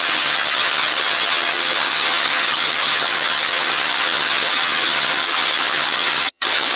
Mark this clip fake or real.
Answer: fake